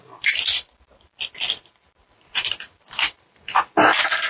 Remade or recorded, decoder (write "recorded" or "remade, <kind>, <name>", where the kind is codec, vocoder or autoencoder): recorded